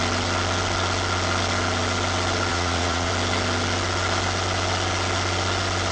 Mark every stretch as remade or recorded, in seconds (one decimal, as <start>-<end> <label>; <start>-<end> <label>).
0.0-2.5 recorded; 2.5-3.1 remade; 3.1-5.9 recorded